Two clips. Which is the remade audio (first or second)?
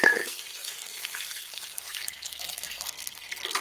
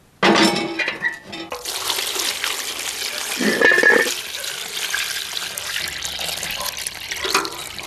first